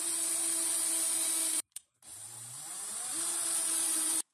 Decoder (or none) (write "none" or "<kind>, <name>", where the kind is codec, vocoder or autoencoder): vocoder, BigVGAN v2